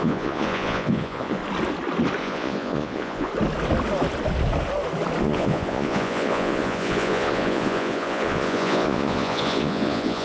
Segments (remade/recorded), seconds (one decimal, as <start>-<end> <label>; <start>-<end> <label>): 0.0-1.4 remade; 1.4-2.2 recorded; 2.2-3.3 remade; 3.3-5.2 recorded; 5.2-10.2 remade